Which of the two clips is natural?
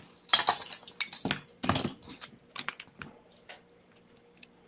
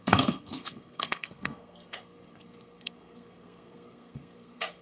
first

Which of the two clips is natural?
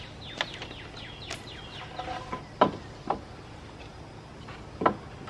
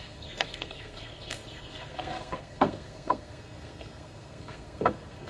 first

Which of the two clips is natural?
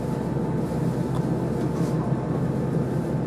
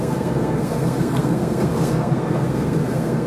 first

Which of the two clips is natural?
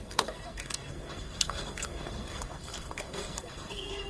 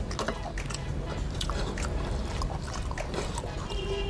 second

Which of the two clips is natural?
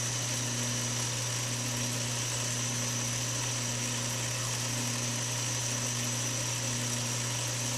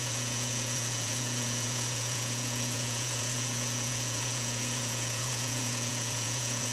first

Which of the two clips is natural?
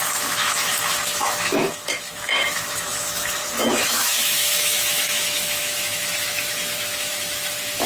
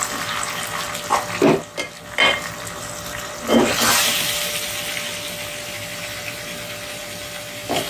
second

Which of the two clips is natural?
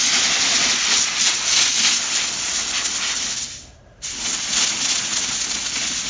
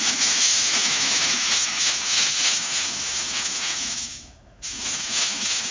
first